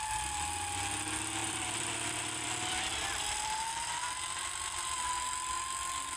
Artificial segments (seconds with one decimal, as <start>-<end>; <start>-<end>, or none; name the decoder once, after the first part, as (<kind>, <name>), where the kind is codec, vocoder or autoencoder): 1.4-5.1 (vocoder, BigVGAN v2)